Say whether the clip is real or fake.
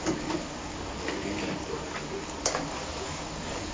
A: fake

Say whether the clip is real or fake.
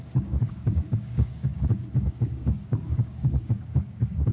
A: fake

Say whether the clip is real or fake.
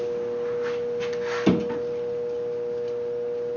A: real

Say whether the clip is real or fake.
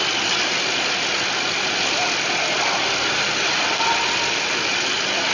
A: real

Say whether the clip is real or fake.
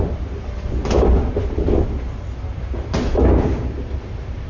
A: real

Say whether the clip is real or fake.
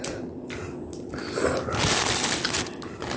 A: real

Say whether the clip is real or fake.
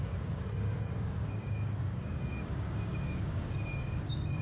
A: fake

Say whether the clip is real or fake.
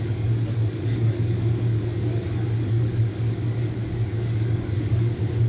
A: fake